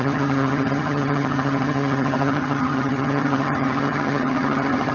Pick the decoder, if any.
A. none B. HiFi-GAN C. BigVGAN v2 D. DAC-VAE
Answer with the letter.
B